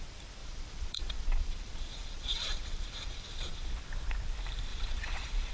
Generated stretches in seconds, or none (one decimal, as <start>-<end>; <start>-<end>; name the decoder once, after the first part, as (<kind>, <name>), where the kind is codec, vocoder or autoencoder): 0.4-3.7 (vocoder, Vocos); 4.7-5.5